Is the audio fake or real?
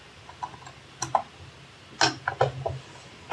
real